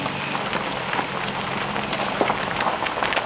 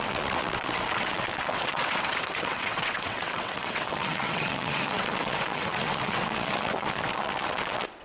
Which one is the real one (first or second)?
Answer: first